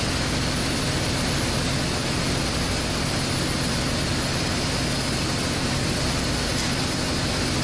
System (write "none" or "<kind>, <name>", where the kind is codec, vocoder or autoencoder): none